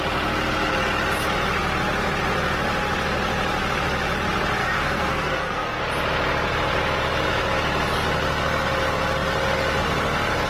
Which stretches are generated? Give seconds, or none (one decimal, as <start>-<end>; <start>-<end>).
4.6-5.8